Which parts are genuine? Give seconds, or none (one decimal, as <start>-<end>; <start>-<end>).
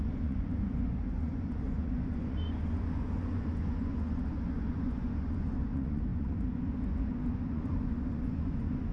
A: none